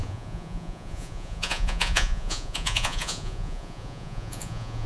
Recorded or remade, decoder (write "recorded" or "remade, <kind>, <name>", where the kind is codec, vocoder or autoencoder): remade, vocoder, Vocos